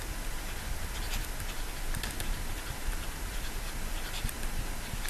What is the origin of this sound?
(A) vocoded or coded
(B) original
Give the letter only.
B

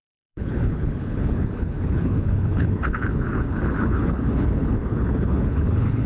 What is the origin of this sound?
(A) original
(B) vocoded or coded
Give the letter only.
B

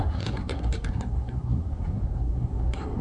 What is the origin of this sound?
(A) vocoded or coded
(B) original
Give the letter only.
A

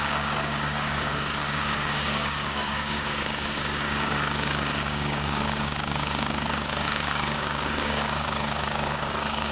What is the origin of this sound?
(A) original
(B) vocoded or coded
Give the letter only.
B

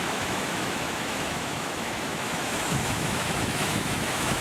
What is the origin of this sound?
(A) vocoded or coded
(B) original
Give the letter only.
A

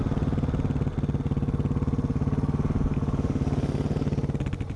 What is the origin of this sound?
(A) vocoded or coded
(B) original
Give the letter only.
B